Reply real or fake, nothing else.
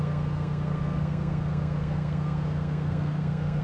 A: fake